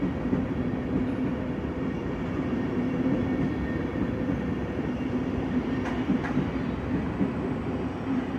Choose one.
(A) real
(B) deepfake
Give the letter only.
A